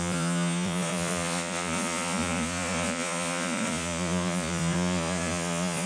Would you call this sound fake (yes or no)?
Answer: yes